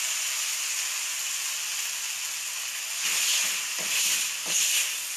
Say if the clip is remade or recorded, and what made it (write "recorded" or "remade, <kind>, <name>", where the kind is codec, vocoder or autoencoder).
recorded